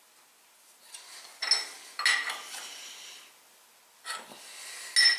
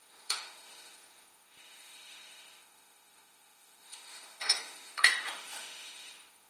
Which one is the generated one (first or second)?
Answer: second